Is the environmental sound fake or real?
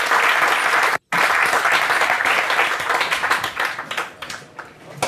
real